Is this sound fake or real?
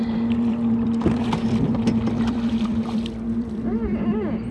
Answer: fake